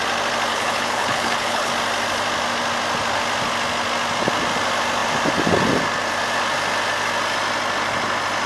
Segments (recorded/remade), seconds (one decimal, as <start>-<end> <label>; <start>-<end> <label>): 0.0-0.5 recorded; 0.5-1.7 remade; 1.7-8.5 recorded